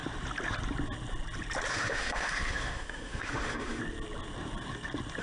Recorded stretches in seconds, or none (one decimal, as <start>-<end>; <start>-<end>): 0.0-1.7; 3.8-5.2

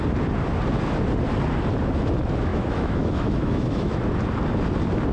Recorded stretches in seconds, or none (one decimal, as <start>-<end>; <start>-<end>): 0.0-2.5; 4.0-5.1